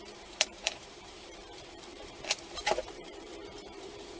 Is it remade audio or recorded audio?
remade